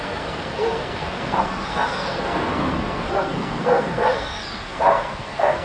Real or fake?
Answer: fake